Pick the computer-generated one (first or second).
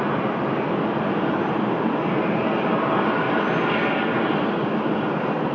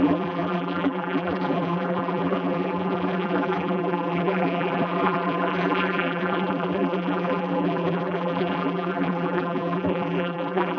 second